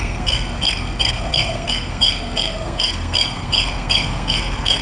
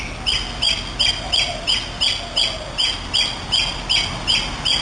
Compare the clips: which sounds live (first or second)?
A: second